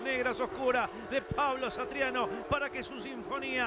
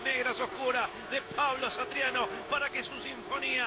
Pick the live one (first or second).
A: first